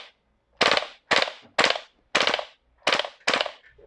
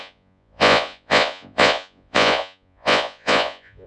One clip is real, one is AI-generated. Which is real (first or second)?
first